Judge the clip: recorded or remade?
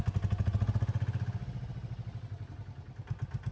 recorded